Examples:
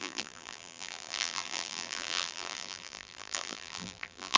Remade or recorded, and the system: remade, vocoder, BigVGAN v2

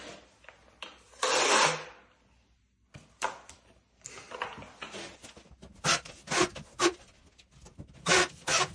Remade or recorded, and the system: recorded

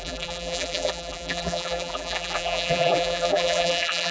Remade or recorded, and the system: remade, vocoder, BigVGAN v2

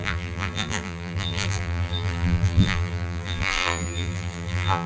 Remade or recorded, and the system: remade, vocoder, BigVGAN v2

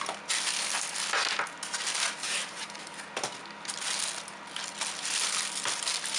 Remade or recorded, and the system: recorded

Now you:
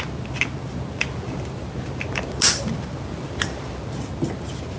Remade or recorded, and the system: recorded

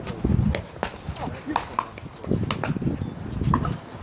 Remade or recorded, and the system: recorded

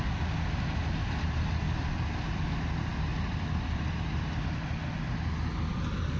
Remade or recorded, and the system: recorded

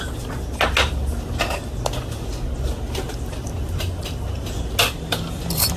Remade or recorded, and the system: recorded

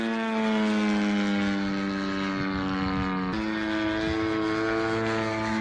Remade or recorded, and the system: recorded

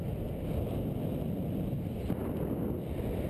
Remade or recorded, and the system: recorded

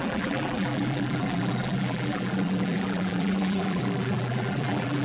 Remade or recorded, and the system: remade, vocoder, BigVGAN v2